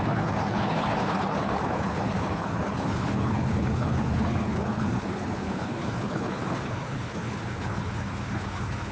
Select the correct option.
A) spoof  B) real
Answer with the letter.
A